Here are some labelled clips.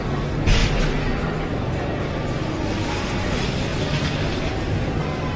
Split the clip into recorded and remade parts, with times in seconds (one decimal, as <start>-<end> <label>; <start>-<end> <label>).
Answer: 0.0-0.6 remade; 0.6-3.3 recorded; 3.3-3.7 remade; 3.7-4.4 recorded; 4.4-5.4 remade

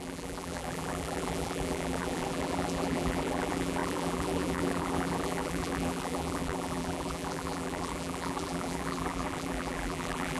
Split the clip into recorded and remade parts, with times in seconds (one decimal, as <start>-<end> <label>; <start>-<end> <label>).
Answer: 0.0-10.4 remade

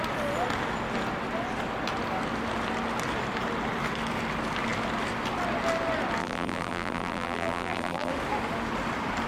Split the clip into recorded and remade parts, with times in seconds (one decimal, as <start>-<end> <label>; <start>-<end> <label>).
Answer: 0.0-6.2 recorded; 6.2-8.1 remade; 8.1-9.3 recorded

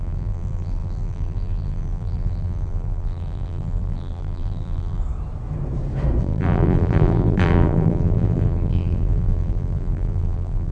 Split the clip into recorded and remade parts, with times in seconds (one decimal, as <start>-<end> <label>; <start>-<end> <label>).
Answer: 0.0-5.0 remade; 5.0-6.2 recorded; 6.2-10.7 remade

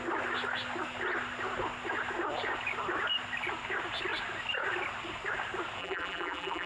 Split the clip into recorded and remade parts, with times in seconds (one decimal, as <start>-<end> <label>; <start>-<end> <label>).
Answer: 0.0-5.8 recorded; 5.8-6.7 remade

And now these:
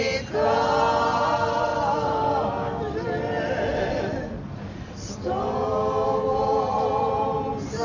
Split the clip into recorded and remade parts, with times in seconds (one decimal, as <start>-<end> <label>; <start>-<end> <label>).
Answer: 0.0-1.7 recorded; 1.7-5.4 remade; 5.4-6.3 recorded; 6.3-7.1 remade; 7.1-7.8 recorded